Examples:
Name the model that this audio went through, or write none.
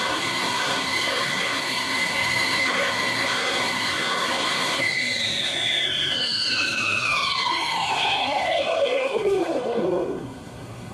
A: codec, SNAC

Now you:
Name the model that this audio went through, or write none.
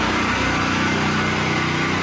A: none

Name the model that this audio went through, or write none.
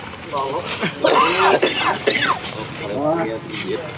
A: none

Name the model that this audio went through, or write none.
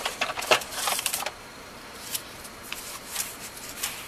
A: vocoder, BigVGAN v2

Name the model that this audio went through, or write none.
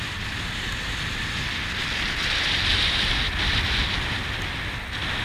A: none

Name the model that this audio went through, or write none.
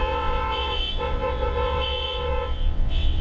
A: vocoder, WaveNeXt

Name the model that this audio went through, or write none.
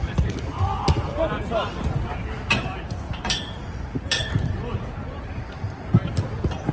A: none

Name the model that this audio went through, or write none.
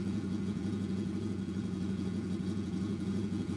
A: vocoder, Vocos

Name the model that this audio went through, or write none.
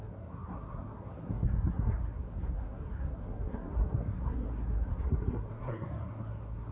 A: codec, SNAC